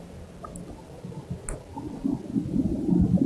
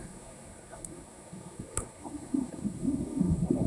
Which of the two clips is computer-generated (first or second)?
second